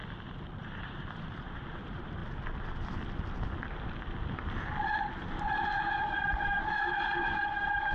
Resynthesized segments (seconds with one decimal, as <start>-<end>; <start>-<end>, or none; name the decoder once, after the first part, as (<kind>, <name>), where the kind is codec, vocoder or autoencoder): 0.6-2.2 (vocoder, BigVGAN v2); 6.0-7.9

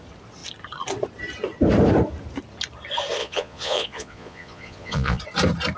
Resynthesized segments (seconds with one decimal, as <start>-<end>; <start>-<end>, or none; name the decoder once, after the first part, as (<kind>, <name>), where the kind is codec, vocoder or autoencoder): 3.2-5.2 (vocoder, Vocos)